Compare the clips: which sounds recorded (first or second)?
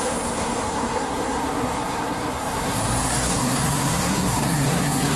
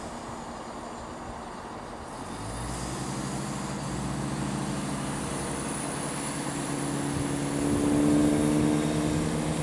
second